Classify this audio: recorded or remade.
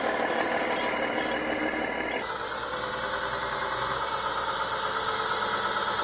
recorded